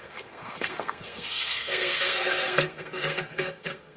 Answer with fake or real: fake